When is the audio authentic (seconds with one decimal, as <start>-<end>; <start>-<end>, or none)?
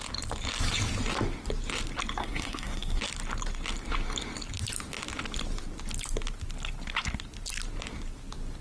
0.0-2.2; 3.0-8.6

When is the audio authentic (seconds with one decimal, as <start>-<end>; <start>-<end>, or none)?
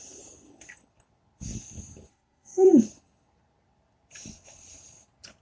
0.0-2.1; 2.7-5.4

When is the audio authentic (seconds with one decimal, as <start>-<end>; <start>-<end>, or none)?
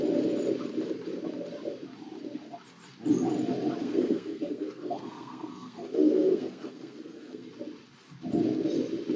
0.0-3.8; 7.5-9.2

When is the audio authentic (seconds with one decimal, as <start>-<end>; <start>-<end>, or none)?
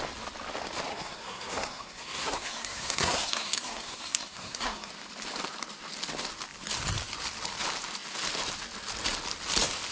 0.0-0.9; 4.9-9.9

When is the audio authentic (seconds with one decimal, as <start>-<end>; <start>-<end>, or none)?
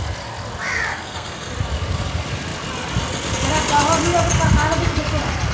0.0-0.9; 1.5-5.5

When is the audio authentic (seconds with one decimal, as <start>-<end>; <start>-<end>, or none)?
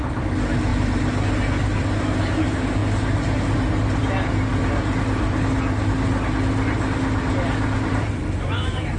0.0-9.0